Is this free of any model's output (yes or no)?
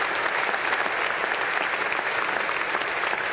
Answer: yes